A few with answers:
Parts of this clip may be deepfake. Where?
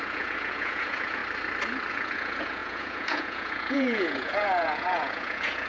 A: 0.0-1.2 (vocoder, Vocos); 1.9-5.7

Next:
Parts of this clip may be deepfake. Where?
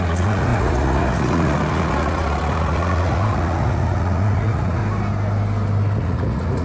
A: 0.0-4.8 (vocoder, Vocos); 6.0-6.6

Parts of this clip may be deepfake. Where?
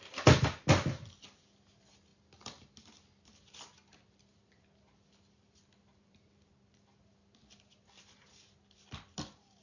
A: none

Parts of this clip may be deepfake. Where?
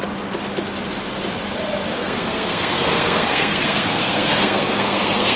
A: 2.0-5.4 (codec, SNAC)